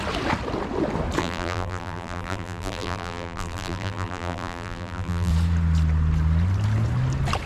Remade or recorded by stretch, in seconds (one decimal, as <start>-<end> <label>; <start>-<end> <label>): 0.0-1.2 recorded; 1.2-5.3 remade; 5.3-7.5 recorded